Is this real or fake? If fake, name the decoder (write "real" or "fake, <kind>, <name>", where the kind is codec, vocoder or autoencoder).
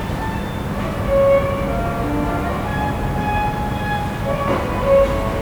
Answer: real